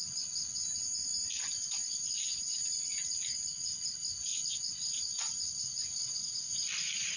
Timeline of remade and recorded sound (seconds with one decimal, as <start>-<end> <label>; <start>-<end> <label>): 0.0-0.6 remade; 0.6-1.4 recorded; 1.4-2.6 remade; 2.6-3.5 recorded; 3.5-6.5 remade; 6.5-7.2 recorded